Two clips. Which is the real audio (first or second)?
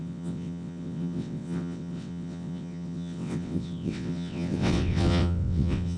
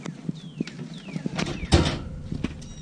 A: second